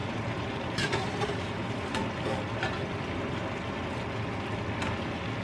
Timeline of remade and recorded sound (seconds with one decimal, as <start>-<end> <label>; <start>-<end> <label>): 0.0-3.2 remade; 3.2-5.4 recorded